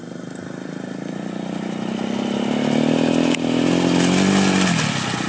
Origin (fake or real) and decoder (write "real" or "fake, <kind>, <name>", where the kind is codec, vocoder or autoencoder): real